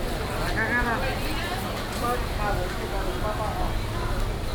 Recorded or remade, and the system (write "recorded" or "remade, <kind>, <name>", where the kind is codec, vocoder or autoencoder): recorded